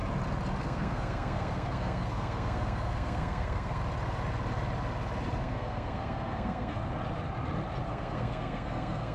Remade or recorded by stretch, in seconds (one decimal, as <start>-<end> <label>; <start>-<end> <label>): 0.0-0.6 recorded; 0.6-3.8 remade; 3.8-5.4 recorded; 5.4-6.8 remade; 6.8-7.9 recorded; 7.9-9.1 remade